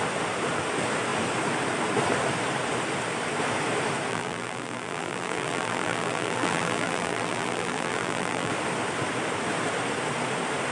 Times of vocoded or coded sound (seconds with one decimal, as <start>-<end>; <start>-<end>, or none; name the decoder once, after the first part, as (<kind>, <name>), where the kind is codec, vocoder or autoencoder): 4.1-8.5 (vocoder, BigVGAN v2)